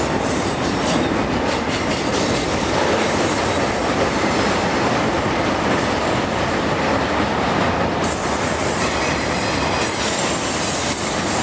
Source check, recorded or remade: remade